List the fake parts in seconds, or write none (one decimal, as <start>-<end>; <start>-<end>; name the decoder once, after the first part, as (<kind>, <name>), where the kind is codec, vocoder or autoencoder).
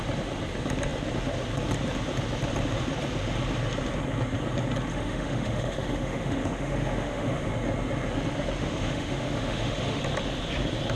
4.9-7.5 (autoencoder, DAC-VAE); 8.6-10.0